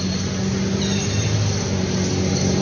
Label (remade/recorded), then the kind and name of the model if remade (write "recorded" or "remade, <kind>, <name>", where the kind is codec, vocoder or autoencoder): recorded